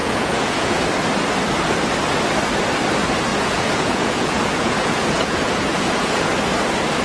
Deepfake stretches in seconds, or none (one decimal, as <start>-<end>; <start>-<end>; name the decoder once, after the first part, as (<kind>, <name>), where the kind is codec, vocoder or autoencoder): 0.0-0.8 (vocoder, Vocos); 3.3-6.2

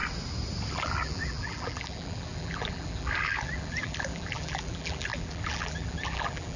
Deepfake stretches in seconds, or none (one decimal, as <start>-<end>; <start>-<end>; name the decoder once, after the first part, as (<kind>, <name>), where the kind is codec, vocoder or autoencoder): 0.7-6.6 (vocoder, BigVGAN v2)

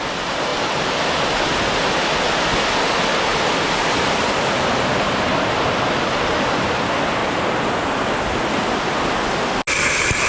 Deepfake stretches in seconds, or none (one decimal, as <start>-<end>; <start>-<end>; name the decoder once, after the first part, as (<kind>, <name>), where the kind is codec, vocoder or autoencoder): none

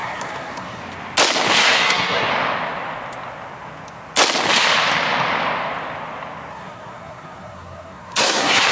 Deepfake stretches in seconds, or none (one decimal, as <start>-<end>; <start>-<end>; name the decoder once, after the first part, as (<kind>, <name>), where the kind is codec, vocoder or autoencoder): 0.0-0.8 (codec, SNAC); 1.6-2.3; 6.5-8.7